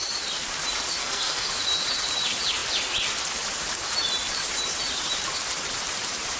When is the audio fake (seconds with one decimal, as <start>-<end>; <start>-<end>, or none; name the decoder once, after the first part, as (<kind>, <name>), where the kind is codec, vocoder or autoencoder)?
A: 1.0-1.5 (codec, SNAC)